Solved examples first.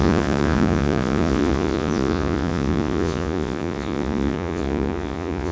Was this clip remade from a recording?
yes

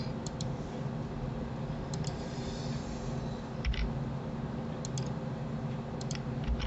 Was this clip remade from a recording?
no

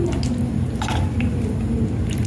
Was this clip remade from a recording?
no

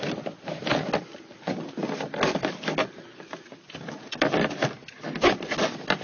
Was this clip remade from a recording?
no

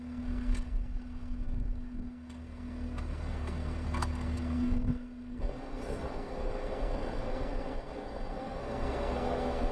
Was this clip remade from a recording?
yes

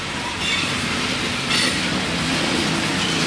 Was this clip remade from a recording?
no